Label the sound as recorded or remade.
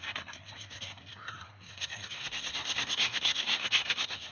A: remade